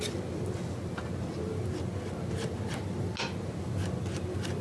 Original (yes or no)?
yes